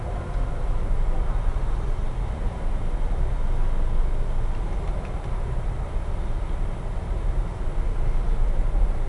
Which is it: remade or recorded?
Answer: recorded